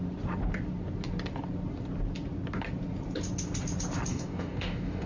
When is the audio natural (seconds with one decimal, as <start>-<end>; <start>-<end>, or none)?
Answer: 0.0-4.1

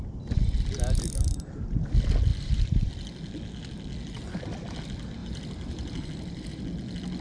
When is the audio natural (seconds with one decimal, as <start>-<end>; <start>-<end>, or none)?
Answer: 0.0-2.3; 2.9-5.2; 6.6-7.2

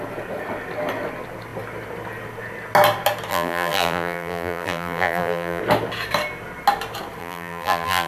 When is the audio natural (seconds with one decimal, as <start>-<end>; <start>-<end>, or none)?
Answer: 0.0-3.3; 5.6-7.2

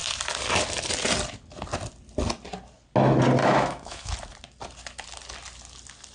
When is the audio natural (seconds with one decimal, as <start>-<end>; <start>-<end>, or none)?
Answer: 0.0-3.4; 4.1-6.1

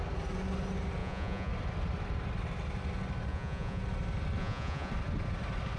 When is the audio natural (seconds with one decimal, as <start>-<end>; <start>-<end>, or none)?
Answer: 0.0-1.0; 1.5-3.3; 3.8-4.4; 4.9-5.8

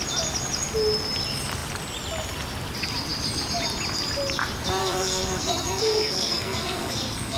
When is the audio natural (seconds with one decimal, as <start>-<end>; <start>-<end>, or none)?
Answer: 0.0-4.8

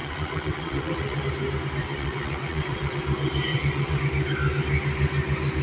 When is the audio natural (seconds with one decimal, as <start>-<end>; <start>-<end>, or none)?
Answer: 1.2-1.8; 3.0-3.5; 4.0-5.6